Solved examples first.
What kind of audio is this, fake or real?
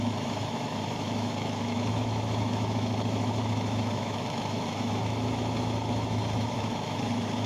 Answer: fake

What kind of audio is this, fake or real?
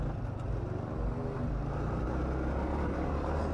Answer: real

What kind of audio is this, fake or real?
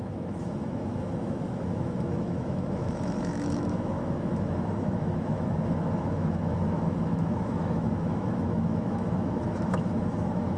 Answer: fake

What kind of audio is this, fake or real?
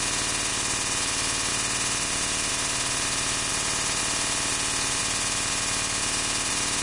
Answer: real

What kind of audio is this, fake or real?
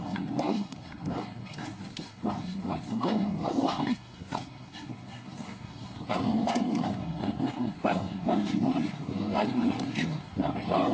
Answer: fake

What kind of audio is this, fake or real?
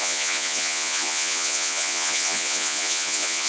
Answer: fake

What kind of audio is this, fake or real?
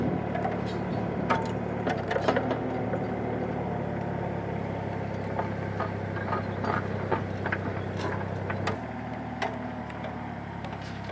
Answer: real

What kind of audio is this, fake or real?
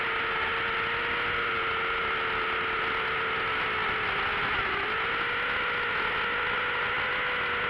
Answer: real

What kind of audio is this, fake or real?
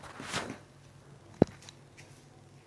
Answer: real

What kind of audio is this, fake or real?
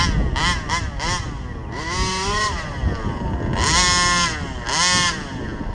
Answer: real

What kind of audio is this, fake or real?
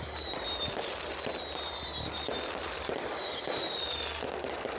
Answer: real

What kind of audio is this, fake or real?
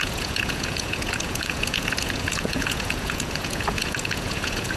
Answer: fake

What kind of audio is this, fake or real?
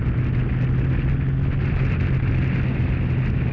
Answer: real